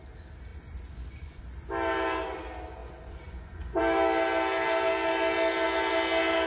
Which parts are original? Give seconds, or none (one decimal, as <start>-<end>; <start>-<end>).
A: 0.0-0.5; 1.4-2.8; 3.8-6.5